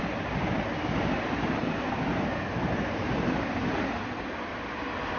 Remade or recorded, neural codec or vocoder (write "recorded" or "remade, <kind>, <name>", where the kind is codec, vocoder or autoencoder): recorded